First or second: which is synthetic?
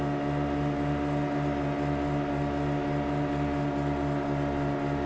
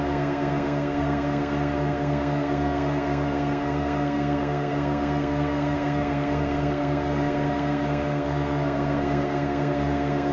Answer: second